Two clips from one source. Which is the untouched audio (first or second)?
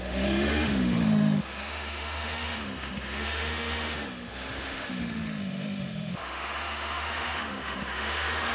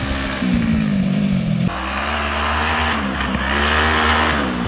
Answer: second